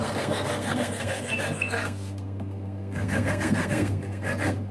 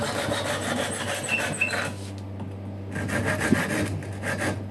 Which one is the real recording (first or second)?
second